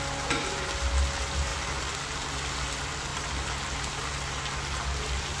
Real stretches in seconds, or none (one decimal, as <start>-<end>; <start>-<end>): 0.0-5.4